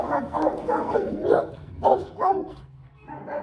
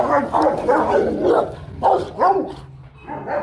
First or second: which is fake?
first